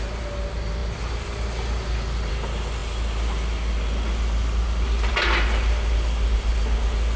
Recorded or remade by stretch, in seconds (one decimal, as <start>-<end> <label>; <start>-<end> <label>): 0.0-7.2 recorded